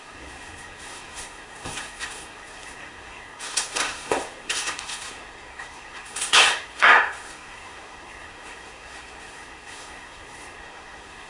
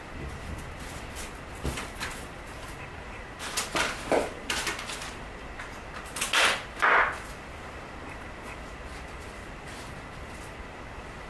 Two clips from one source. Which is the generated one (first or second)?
first